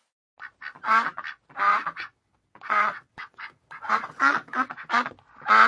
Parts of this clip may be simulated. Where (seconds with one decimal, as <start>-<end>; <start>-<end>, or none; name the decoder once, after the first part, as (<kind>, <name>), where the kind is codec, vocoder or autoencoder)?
1.7-5.1 (vocoder, WaveNeXt)